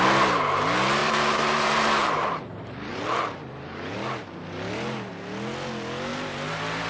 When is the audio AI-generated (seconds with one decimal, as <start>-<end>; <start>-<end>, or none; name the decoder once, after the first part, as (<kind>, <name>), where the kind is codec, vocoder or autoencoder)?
1.0-5.1 (vocoder, BigVGAN v2); 6.1-6.9